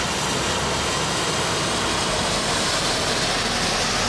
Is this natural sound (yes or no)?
yes